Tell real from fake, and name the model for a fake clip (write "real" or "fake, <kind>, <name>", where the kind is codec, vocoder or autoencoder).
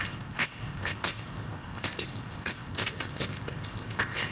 fake, codec, ZipCodec